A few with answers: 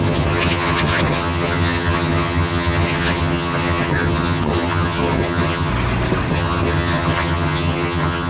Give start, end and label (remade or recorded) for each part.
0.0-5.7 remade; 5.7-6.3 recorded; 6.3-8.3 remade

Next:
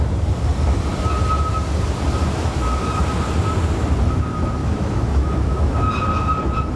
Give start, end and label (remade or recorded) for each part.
0.0-2.2 recorded; 2.2-2.9 remade; 2.9-4.6 recorded; 4.6-5.9 remade; 5.9-6.8 recorded